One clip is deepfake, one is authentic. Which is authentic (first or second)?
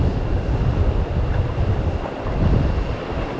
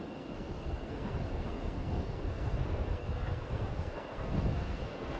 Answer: first